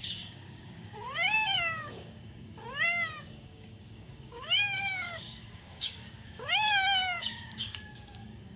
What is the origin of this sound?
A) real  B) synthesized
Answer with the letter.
B